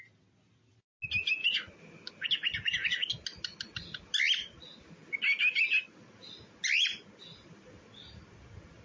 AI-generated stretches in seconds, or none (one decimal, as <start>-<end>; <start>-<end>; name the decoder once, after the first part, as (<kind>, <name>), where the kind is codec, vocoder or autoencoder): none